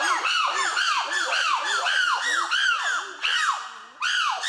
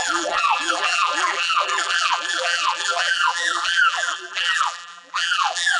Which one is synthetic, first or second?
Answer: second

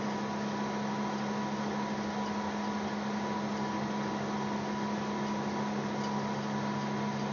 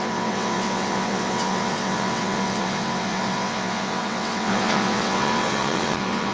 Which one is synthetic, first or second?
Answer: second